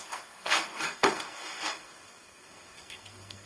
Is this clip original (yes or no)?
no